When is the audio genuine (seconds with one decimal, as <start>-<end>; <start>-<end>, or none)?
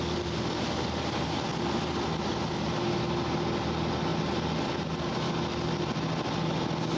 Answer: 0.0-7.0